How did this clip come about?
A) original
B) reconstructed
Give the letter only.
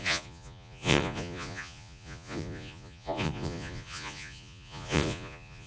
B